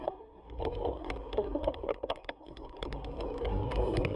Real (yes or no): no